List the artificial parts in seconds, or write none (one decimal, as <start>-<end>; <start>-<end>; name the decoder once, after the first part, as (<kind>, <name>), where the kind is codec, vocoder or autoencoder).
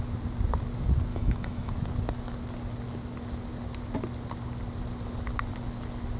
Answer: 1.1-1.7 (autoencoder, DAC-VAE)